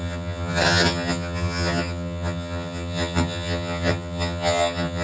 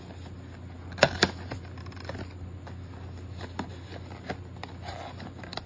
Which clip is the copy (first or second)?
first